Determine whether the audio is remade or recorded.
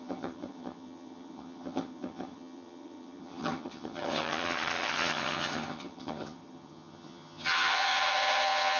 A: remade